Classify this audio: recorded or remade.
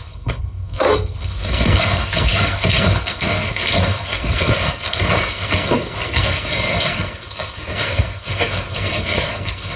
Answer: remade